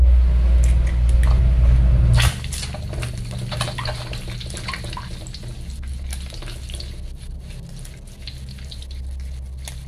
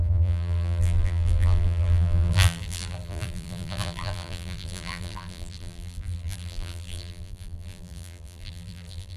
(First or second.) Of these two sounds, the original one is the first